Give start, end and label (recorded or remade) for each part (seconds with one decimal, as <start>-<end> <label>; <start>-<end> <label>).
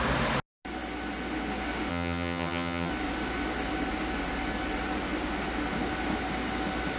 0.0-1.9 recorded; 1.9-2.9 remade; 2.9-7.0 recorded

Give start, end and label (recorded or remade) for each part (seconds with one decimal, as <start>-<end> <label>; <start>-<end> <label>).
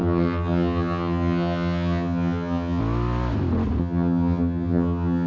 0.0-2.8 remade; 2.8-3.8 recorded; 3.8-5.3 remade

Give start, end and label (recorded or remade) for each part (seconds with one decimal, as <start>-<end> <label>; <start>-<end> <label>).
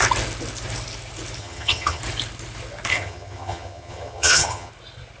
0.0-1.4 recorded; 1.4-2.0 remade; 2.0-2.9 recorded; 2.9-4.7 remade; 4.7-5.2 recorded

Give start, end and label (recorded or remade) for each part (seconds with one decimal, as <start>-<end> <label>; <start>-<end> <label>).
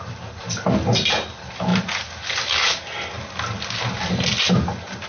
0.0-5.1 recorded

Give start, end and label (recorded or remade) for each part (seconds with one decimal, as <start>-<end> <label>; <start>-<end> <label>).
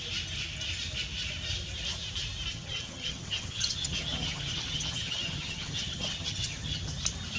0.0-2.5 recorded; 2.5-6.9 remade; 6.9-7.4 recorded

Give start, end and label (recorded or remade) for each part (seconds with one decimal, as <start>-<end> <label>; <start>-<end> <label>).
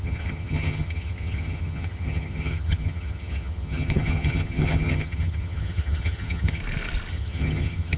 0.0-6.6 remade; 6.6-7.1 recorded; 7.1-8.0 remade